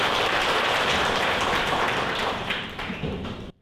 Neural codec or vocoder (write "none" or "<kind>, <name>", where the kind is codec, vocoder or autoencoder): vocoder, BigVGAN v2